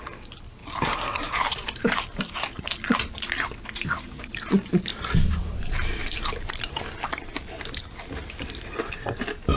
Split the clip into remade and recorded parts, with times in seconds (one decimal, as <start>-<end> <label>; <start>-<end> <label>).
0.0-0.6 recorded; 0.6-2.2 remade; 2.2-4.7 recorded; 4.7-6.8 remade; 6.8-9.6 recorded